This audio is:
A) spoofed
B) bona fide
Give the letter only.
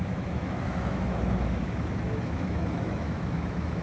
A